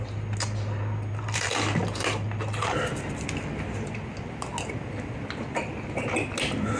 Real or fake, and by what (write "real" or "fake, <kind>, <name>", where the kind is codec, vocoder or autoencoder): real